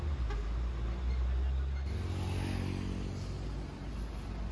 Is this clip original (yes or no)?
yes